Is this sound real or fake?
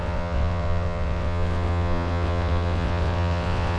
fake